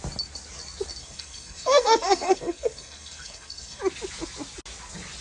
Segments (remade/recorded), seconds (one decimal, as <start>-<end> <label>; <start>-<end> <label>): 0.0-1.0 recorded; 1.0-3.8 remade; 3.8-5.2 recorded